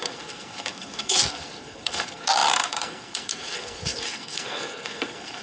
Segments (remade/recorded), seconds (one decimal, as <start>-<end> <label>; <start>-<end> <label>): 0.0-5.4 remade